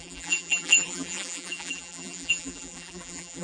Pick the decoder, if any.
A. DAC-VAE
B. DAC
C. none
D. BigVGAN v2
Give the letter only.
D